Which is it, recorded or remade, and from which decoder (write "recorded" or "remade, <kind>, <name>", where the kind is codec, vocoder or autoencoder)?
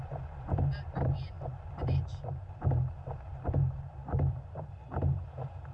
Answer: remade, vocoder, BigVGAN v2